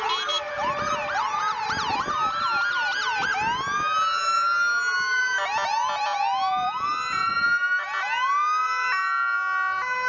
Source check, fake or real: real